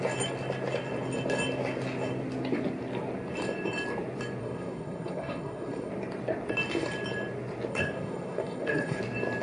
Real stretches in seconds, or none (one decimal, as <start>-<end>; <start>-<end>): 0.0-4.4; 5.9-7.7; 9.0-9.4